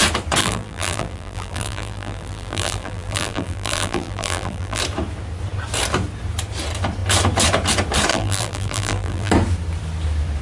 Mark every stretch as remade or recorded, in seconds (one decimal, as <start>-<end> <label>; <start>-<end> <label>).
0.0-0.4 recorded; 0.4-4.8 remade; 4.8-8.1 recorded; 8.1-9.3 remade; 9.3-10.4 recorded

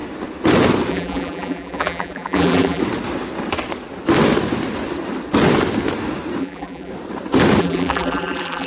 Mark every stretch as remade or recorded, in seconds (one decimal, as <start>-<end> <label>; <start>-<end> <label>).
0.0-0.9 recorded; 0.9-2.8 remade; 2.8-6.4 recorded; 6.4-6.9 remade; 6.9-7.6 recorded; 7.6-8.7 remade